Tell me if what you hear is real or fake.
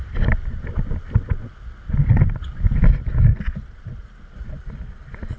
real